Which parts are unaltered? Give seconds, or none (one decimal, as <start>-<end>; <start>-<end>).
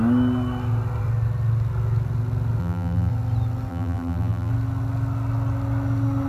0.0-2.6; 3.1-3.7; 4.5-6.3